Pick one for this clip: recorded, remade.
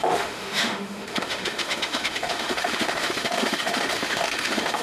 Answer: remade